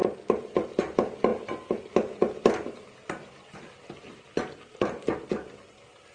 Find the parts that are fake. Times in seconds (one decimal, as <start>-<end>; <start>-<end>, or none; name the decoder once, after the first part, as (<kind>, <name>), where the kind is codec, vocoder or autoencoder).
1.3-4.2 (vocoder, BigVGAN v2)